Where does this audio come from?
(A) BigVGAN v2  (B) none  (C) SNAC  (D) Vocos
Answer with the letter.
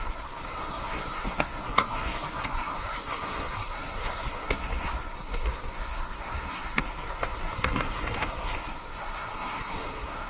C